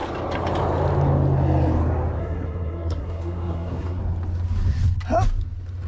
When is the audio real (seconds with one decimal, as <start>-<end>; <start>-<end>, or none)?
0.0-2.2; 4.0-5.9